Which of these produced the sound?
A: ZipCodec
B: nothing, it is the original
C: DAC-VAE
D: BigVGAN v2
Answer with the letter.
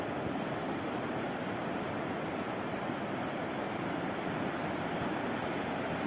B